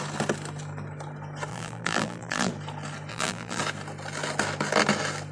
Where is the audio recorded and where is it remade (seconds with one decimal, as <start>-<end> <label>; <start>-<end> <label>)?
0.0-1.5 recorded; 1.5-2.5 remade; 2.5-3.1 recorded; 3.1-3.6 remade; 3.6-5.3 recorded

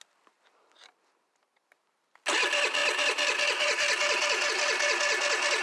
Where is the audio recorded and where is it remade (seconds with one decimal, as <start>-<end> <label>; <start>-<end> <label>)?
0.0-5.6 recorded

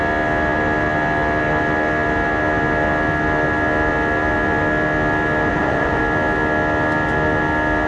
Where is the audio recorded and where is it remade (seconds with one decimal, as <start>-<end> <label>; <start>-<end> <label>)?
0.0-5.5 recorded; 5.5-6.0 remade; 6.0-7.9 recorded

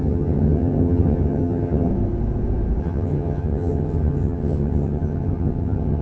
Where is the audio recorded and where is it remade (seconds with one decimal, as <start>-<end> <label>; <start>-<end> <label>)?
0.0-1.9 remade; 1.9-2.8 recorded; 2.8-6.0 remade

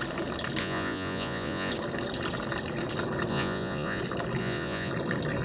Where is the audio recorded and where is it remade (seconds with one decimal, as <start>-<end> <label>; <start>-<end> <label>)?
0.0-0.6 recorded; 0.6-1.7 remade; 1.7-3.3 recorded; 3.3-4.0 remade; 4.0-4.4 recorded; 4.4-4.9 remade; 4.9-5.4 recorded

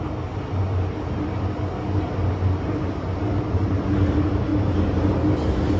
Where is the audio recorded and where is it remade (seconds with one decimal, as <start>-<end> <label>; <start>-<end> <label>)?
0.0-5.8 recorded